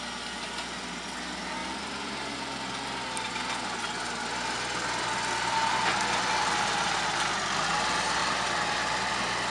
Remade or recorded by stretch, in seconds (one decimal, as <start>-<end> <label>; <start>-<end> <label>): 0.0-9.5 recorded